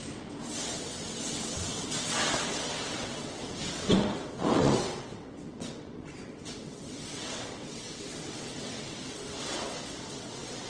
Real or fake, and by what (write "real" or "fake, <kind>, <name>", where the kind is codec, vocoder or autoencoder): fake, vocoder, WaveNeXt